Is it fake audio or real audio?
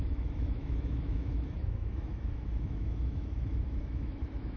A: fake